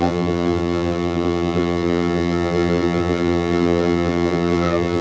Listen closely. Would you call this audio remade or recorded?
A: remade